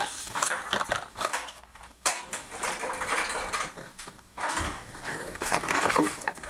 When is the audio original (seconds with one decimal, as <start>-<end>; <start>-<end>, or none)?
0.6-1.1; 2.5-3.7